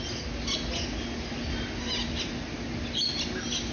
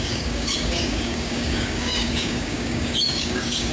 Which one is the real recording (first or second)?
first